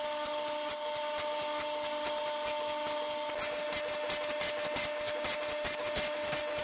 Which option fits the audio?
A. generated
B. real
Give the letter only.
B